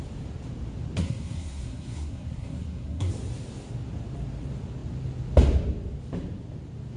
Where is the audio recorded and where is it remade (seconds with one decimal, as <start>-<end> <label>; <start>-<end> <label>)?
0.0-1.0 recorded; 1.0-3.1 remade; 3.1-7.0 recorded